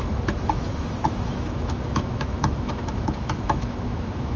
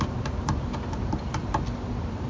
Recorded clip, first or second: second